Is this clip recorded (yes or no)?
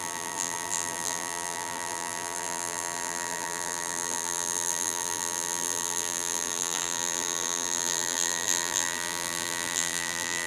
no